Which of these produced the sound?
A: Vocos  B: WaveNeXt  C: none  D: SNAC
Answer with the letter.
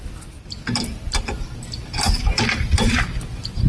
C